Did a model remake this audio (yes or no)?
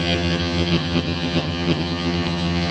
yes